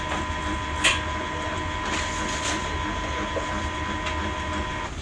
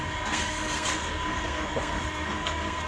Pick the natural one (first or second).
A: first